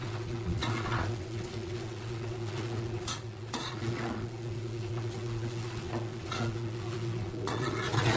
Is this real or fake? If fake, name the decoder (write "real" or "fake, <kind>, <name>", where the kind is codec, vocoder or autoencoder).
fake, vocoder, Vocos